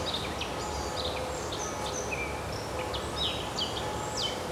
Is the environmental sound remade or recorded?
recorded